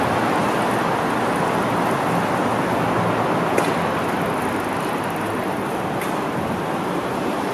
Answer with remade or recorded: recorded